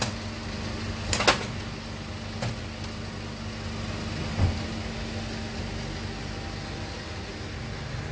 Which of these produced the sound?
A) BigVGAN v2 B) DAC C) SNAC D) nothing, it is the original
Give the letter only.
D